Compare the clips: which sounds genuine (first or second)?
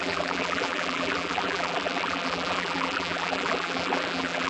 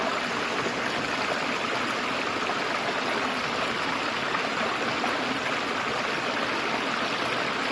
second